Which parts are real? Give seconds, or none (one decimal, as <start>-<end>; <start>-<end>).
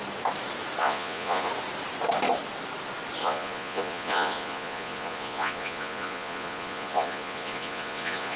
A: 0.0-0.8; 1.5-3.2